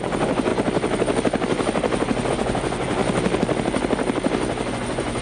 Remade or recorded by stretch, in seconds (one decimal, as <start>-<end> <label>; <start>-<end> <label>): 0.0-0.5 remade; 0.5-2.3 recorded; 2.3-3.0 remade; 3.0-4.7 recorded; 4.7-5.2 remade